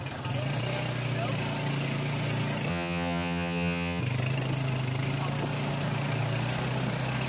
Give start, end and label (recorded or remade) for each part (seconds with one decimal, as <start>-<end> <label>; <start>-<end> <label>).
0.0-2.7 recorded; 2.7-4.0 remade; 4.0-7.3 recorded